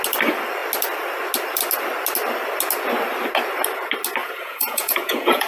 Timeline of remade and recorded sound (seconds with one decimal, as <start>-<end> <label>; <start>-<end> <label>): 0.0-4.2 recorded; 4.2-5.5 remade